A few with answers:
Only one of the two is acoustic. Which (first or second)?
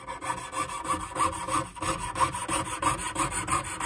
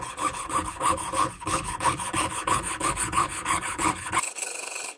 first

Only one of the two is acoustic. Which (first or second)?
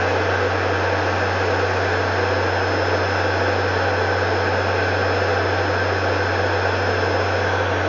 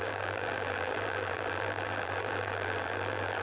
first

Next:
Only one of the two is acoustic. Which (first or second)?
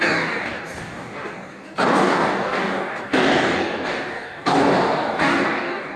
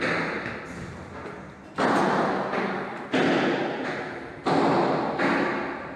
second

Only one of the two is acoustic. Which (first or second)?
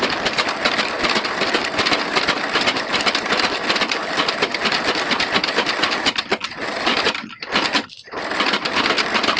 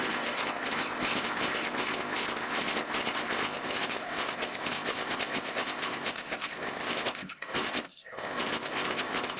first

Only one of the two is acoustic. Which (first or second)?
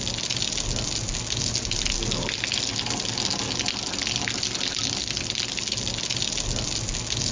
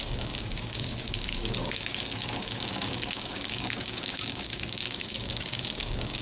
first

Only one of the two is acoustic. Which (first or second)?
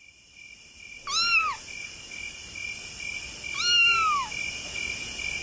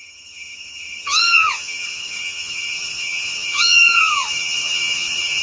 first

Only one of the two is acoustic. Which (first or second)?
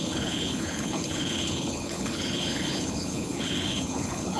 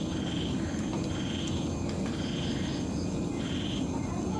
second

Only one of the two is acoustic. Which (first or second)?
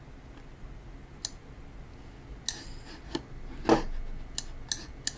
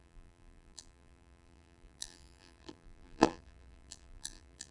first